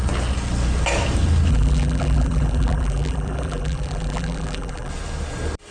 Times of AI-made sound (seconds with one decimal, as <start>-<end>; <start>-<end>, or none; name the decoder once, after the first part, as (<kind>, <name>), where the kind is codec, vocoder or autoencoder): 1.5-4.9 (vocoder, BigVGAN v2)